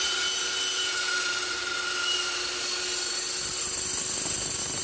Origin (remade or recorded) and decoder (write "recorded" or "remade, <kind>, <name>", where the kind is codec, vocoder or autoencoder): recorded